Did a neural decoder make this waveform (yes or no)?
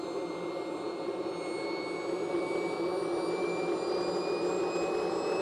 no